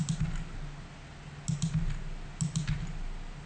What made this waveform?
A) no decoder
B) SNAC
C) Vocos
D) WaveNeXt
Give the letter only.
A